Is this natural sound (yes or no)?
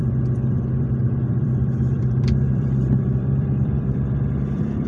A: no